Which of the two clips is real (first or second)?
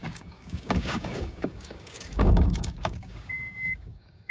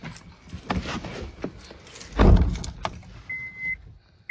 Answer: second